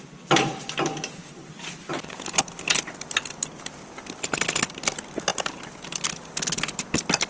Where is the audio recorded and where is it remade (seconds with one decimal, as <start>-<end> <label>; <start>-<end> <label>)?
0.0-5.3 recorded; 5.3-6.0 remade; 6.0-7.3 recorded